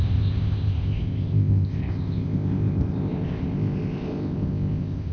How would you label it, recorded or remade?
remade